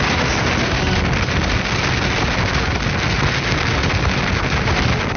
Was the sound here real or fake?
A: real